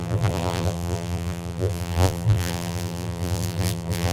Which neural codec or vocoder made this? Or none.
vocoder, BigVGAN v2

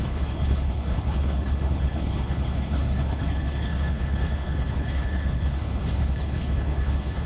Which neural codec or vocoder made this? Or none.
codec, HILCodec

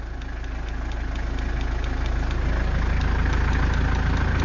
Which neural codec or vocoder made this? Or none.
none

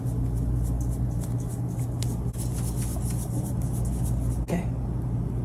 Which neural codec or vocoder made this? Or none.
none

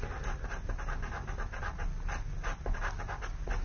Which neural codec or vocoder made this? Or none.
none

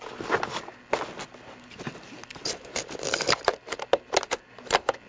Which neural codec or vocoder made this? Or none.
none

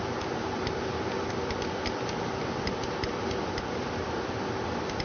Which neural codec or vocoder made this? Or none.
vocoder, BigVGAN v2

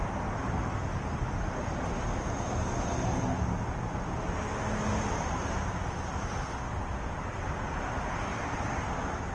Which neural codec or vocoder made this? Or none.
none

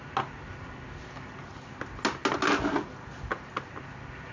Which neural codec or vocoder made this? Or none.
none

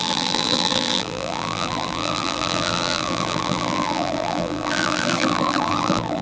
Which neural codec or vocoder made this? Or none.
vocoder, BigVGAN v2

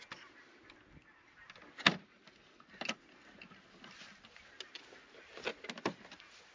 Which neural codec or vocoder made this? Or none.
none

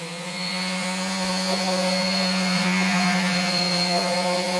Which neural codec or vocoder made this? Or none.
vocoder, Vocos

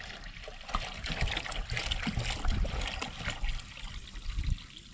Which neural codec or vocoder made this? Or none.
none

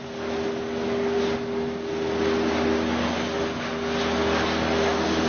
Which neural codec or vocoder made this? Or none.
none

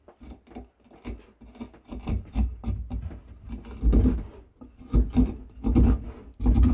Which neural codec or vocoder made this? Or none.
none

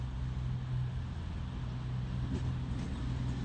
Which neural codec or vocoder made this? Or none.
none